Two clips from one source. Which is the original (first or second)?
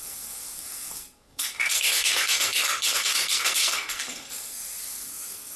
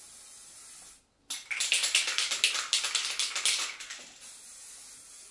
second